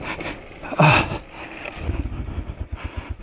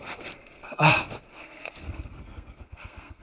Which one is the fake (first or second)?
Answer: second